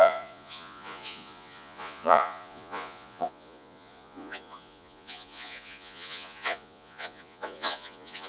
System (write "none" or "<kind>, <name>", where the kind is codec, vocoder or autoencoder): vocoder, Vocos